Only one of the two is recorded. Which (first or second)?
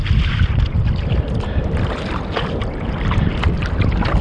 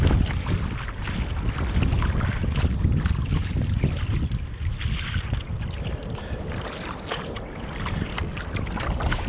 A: second